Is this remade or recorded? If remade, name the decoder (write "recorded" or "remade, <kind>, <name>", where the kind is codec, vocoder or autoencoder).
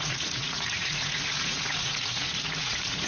remade, vocoder, Vocos